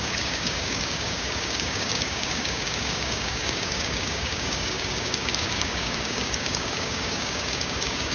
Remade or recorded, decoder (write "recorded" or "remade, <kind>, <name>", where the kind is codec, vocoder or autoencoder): remade, codec, DAC